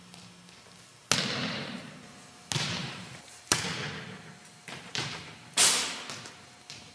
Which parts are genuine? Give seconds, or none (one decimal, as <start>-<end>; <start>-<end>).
0.0-1.4; 1.9-2.8; 3.4-4.6; 5.2-6.9